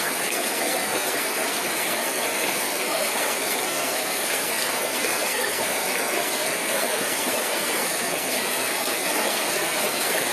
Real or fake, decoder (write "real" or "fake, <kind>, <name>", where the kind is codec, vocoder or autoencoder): fake, codec, SNAC